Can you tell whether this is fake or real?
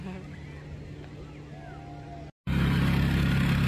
real